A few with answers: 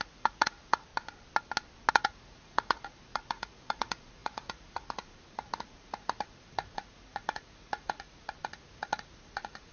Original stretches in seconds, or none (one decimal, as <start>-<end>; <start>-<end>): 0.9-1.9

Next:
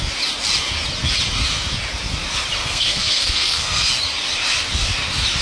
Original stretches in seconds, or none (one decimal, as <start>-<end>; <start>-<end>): 0.0-2.6; 3.9-5.4

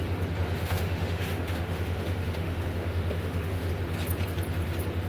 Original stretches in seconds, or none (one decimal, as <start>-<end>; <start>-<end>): 0.0-0.6; 3.7-5.1

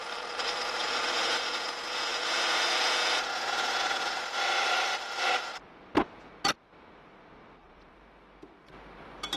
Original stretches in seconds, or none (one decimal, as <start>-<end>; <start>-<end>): 0.0-0.8; 4.2-9.4

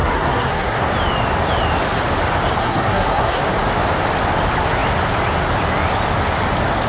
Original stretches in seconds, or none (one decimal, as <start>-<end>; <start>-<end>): 0.8-2.6; 3.4-6.9